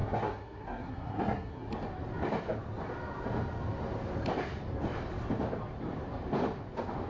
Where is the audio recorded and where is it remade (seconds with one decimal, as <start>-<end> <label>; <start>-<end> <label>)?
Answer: 0.0-1.7 remade; 1.7-7.1 recorded